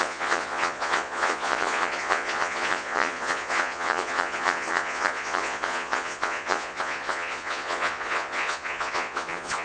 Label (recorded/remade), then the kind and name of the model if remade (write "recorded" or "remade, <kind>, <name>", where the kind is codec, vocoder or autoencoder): remade, vocoder, Vocos